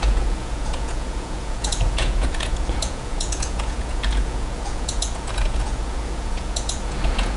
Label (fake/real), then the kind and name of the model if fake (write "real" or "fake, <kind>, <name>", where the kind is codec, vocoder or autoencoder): fake, vocoder, Vocos